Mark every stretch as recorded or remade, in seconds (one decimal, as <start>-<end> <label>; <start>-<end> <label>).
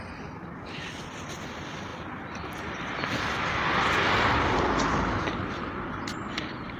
0.0-6.8 recorded